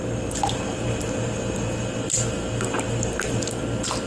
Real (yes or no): yes